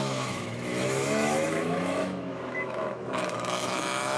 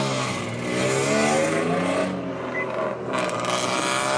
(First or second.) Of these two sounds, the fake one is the first